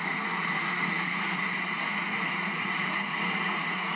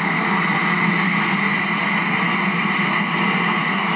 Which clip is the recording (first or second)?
second